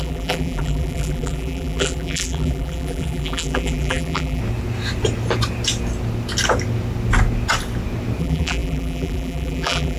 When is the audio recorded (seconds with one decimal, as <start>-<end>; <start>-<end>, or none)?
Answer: 4.4-8.2